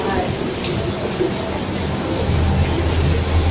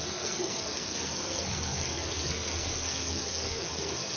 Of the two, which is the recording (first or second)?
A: first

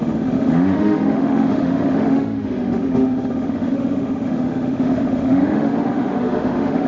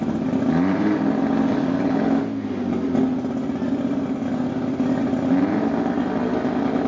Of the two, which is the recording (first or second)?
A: second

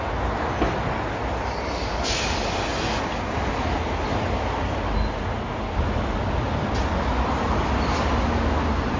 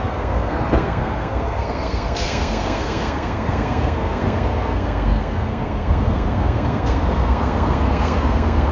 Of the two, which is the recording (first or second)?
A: first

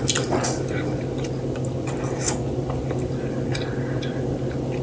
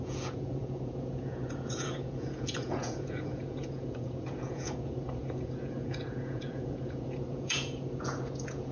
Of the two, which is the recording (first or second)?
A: first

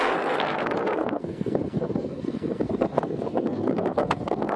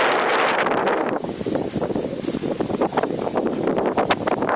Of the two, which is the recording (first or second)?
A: second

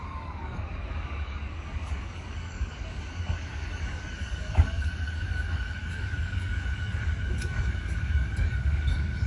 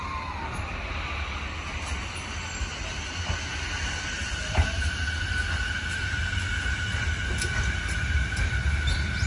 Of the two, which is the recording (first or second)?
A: second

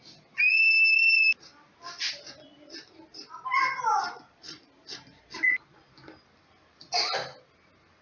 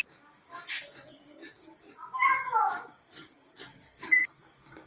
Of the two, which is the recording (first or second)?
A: first